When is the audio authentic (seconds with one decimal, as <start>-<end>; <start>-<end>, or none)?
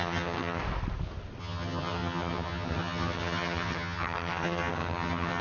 0.6-1.4